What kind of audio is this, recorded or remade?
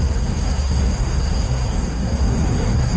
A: remade